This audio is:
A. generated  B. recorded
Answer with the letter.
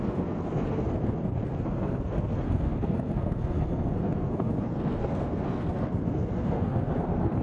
A